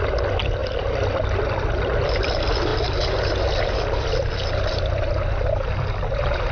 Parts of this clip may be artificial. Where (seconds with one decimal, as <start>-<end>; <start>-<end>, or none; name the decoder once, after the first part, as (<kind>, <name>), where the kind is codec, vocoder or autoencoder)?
none